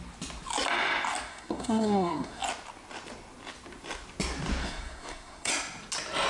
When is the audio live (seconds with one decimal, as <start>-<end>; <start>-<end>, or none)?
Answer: 0.0-1.3; 2.4-4.6; 5.5-6.3